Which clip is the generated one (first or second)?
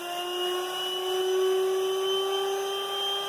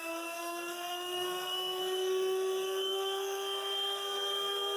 second